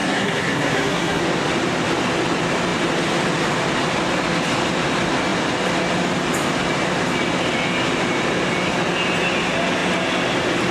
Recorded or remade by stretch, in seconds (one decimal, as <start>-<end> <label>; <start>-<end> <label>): 0.0-1.2 remade; 1.2-10.7 recorded